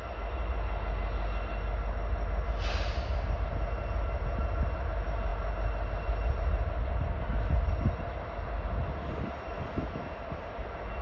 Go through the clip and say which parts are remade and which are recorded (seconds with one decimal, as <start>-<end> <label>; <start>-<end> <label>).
0.0-11.0 recorded